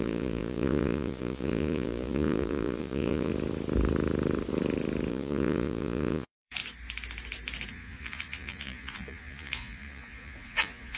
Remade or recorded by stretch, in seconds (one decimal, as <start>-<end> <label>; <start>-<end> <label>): 0.0-3.3 remade; 3.3-5.1 recorded; 5.1-6.6 remade; 6.6-7.7 recorded; 7.7-11.0 remade

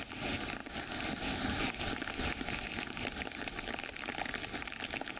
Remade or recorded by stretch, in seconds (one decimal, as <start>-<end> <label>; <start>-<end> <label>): 0.0-5.2 recorded

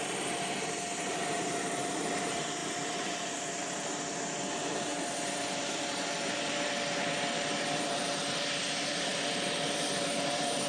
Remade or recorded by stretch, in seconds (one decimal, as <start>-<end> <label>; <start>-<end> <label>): 0.0-10.7 remade

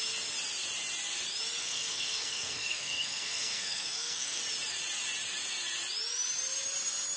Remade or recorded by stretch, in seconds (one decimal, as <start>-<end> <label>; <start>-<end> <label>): 0.0-1.6 recorded; 1.6-4.4 remade; 4.4-7.2 recorded

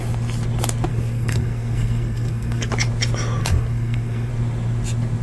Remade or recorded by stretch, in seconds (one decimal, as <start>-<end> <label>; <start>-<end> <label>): 0.0-0.9 recorded; 0.9-2.7 remade; 2.7-3.4 recorded; 3.4-4.3 remade; 4.3-5.2 recorded

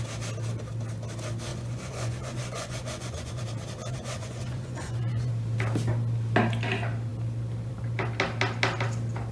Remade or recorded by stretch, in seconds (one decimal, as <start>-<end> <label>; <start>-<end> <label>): 0.0-1.5 recorded; 1.5-3.4 remade; 3.4-3.8 recorded; 3.8-5.3 remade; 5.3-9.3 recorded